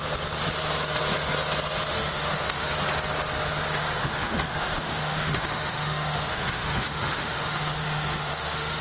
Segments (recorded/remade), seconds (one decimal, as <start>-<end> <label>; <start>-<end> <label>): 0.0-1.9 recorded; 1.9-2.7 remade; 2.7-4.0 recorded; 4.0-8.8 remade